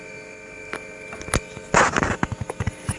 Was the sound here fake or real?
real